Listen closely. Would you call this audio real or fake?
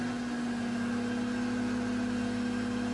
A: real